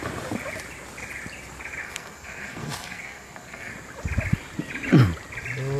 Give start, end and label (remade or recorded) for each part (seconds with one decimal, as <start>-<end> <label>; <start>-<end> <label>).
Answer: 0.0-1.8 recorded; 1.8-3.7 remade; 3.7-5.8 recorded